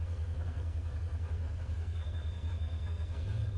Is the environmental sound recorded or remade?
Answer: remade